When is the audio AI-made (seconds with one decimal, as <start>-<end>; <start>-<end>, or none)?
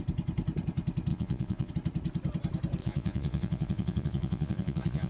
1.1-1.7; 2.8-5.1